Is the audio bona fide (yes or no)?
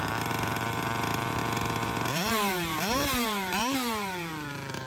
no